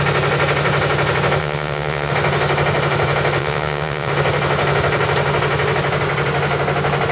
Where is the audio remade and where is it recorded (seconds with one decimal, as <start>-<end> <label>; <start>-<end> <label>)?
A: 0.0-1.4 recorded; 1.4-2.1 remade; 2.1-3.4 recorded; 3.4-4.1 remade; 4.1-7.1 recorded